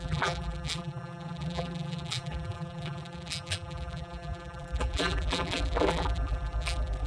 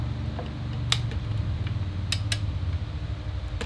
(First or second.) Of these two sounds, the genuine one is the second